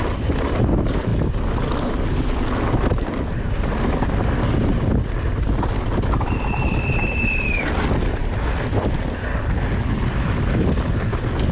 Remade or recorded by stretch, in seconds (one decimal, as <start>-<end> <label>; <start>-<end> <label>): 0.0-11.5 recorded